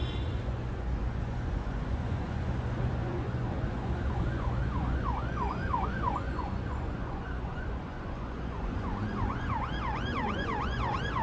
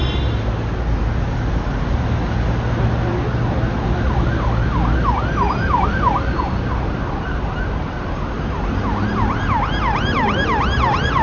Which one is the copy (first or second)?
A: first